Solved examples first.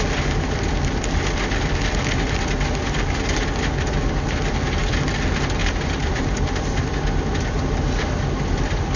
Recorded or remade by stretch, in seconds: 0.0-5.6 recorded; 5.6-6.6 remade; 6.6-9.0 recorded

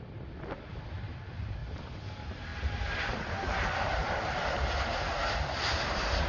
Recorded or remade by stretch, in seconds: 0.0-1.6 recorded; 1.6-2.1 remade; 2.1-2.5 recorded; 2.5-3.3 remade; 3.3-6.3 recorded

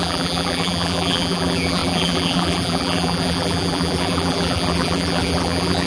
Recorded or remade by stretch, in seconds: 0.0-5.9 remade

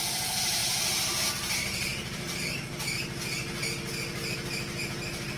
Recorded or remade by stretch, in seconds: 0.0-5.4 recorded

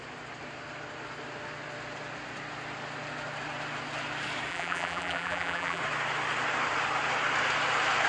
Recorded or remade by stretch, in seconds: 0.0-4.5 recorded; 4.5-5.8 remade; 5.8-8.1 recorded

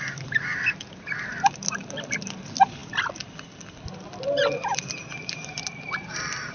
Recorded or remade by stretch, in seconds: 0.0-1.3 remade; 1.3-1.8 recorded; 1.8-6.5 remade